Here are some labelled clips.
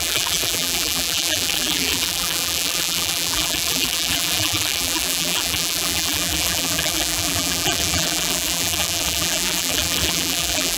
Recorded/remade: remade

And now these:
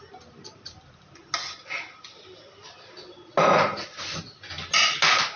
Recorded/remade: recorded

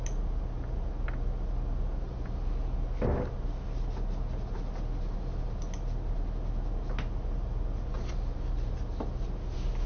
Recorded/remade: recorded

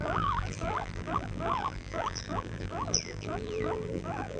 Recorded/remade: remade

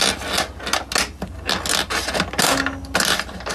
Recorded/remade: recorded